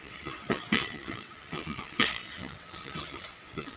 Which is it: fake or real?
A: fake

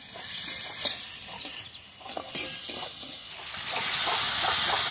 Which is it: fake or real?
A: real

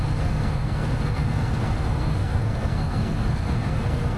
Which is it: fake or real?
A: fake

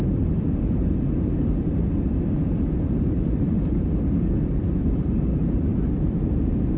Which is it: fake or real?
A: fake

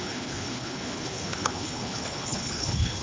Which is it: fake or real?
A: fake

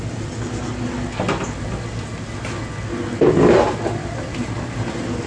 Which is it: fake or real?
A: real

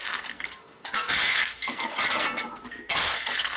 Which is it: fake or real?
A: fake